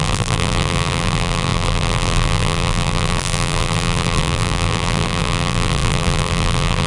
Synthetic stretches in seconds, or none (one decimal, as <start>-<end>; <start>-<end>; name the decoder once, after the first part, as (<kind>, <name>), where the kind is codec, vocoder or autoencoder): 0.0-6.9 (vocoder, BigVGAN v2)